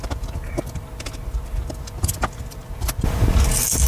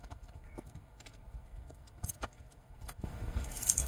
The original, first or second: first